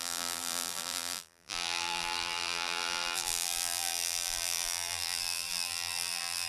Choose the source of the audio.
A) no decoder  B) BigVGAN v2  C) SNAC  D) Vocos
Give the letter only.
B